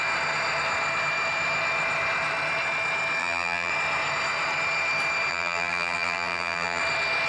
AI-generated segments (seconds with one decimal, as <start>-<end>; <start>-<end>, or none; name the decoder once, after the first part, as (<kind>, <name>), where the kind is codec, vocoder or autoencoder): 3.2-3.7 (vocoder, BigVGAN v2); 5.3-6.8